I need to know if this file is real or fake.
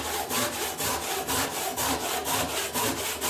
real